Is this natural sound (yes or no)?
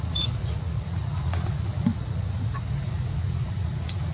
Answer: no